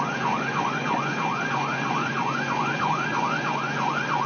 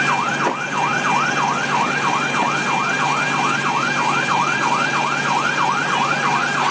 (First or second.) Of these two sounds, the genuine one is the second